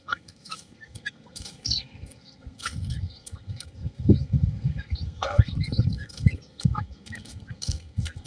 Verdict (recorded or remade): remade